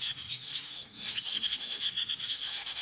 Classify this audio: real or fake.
fake